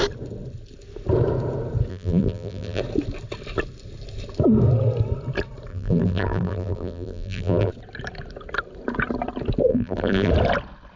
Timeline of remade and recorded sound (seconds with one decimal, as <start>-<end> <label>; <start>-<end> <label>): 0.0-1.9 recorded; 1.9-2.8 remade; 2.8-5.7 recorded; 5.7-7.7 remade; 7.7-9.7 recorded; 9.7-10.3 remade; 10.3-11.0 recorded